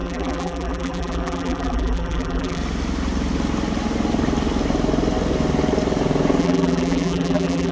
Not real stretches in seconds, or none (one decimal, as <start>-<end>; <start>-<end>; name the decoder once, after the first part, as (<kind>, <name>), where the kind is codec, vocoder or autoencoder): 0.0-2.6 (vocoder, BigVGAN v2); 6.4-7.7